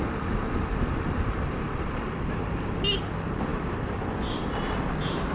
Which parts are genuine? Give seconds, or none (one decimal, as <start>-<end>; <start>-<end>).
0.0-5.3